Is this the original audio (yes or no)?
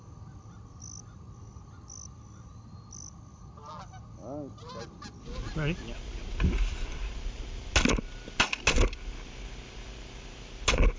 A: yes